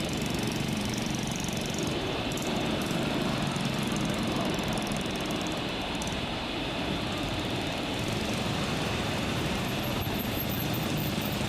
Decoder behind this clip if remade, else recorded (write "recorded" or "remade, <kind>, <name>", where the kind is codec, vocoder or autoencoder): remade, vocoder, BigVGAN v2